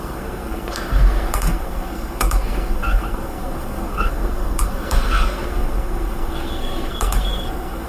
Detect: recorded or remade remade